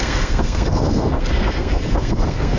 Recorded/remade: remade